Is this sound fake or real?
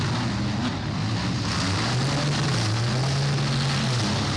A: real